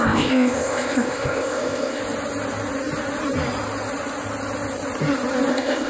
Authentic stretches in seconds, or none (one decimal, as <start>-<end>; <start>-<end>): 2.0-5.5